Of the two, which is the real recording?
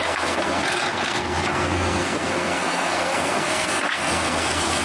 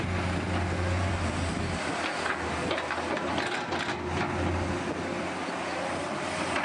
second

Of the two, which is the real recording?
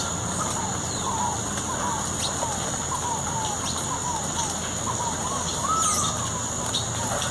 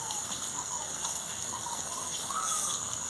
first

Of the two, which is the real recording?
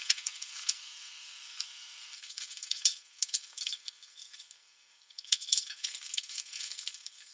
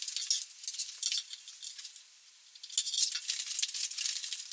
second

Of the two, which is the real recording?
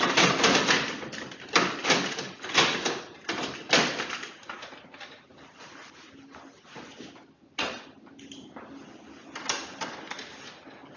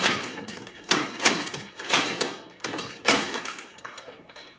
first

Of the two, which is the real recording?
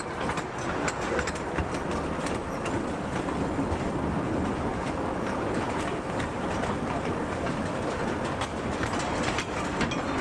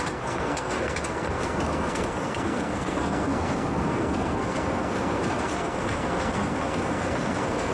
first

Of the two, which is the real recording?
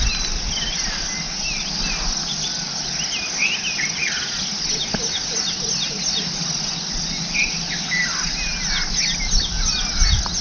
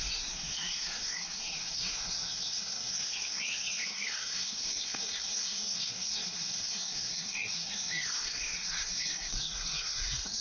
first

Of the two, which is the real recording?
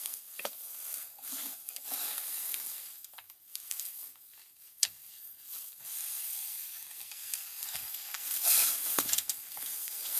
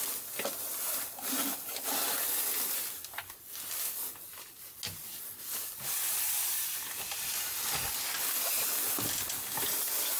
second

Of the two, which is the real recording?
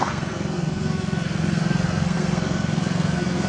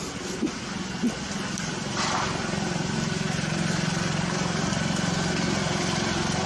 second